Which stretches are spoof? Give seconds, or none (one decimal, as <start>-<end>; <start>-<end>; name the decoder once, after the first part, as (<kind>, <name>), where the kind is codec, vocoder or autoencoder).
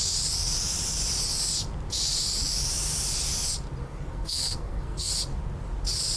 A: 3.8-5.1 (codec, SNAC)